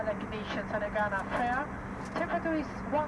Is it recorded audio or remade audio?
recorded